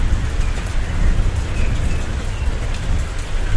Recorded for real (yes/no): yes